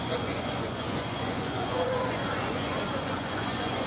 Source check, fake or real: fake